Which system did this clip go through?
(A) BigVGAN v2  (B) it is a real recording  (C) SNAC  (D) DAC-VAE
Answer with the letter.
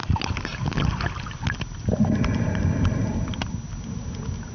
B